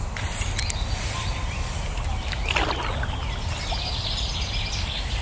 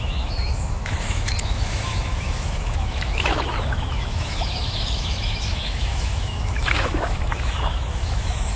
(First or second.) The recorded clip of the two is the first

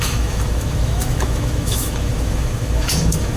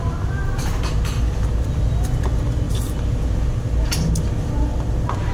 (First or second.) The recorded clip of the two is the second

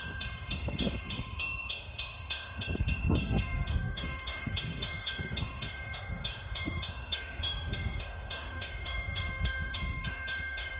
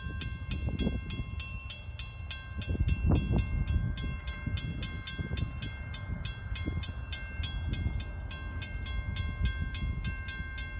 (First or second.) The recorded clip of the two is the second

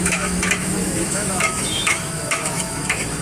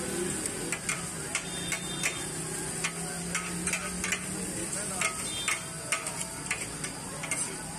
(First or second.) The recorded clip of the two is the second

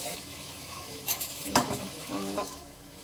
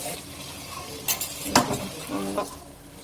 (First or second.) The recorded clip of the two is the second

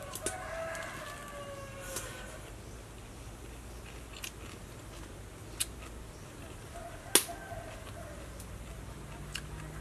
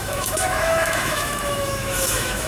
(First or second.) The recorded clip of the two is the first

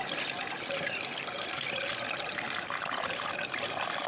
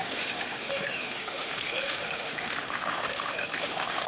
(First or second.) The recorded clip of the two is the first